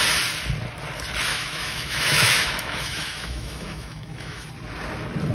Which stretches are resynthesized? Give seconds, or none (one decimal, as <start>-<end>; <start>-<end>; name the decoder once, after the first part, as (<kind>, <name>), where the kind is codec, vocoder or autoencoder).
1.3-4.5 (autoencoder, DAC-VAE)